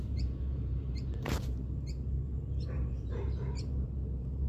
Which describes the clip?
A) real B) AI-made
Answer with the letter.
B